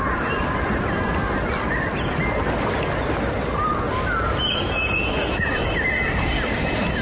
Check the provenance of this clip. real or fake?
real